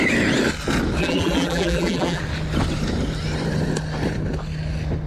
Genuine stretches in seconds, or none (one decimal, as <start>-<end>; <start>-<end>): 0.0-1.0; 2.2-5.1